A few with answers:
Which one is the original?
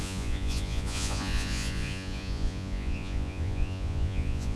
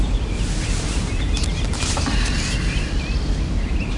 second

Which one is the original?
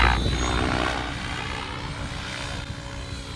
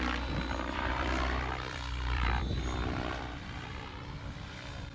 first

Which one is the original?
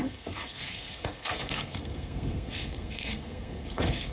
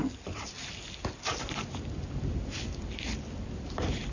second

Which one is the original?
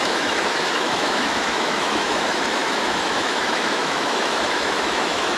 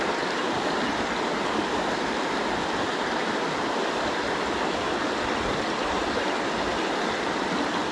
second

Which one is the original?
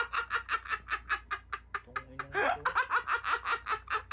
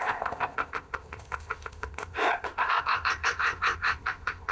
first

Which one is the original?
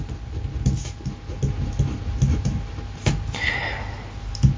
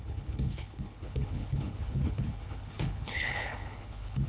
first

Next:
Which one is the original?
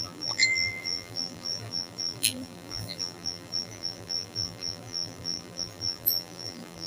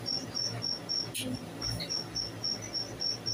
second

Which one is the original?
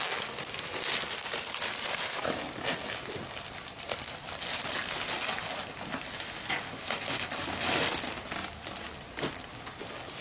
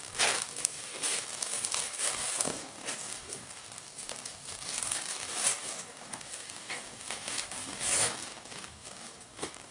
first